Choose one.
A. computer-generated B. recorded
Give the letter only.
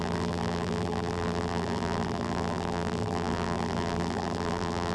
A